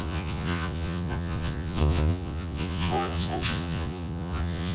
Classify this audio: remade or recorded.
remade